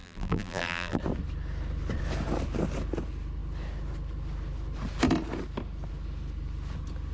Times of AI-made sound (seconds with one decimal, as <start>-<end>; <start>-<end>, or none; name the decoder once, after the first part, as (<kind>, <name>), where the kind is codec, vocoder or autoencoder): 0.0-1.0 (vocoder, BigVGAN v2)